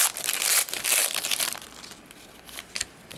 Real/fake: real